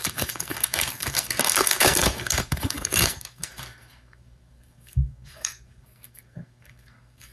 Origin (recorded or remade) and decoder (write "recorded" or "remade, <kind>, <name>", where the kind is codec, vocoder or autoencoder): remade, codec, SNAC